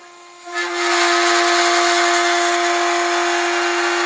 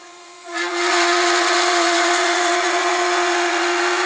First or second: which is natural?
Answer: first